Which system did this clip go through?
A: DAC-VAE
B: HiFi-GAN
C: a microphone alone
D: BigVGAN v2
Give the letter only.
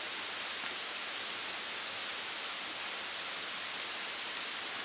C